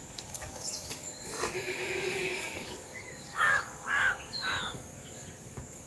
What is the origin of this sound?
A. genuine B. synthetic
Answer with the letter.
B